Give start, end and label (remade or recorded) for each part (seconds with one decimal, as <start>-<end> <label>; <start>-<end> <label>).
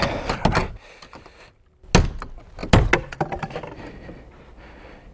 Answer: 0.0-5.1 recorded